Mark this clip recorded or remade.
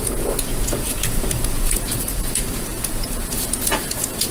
remade